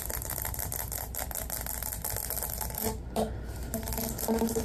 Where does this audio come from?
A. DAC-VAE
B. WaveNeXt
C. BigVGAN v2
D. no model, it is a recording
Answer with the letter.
D